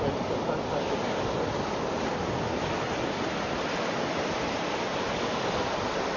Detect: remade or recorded recorded